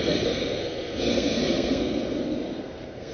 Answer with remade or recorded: remade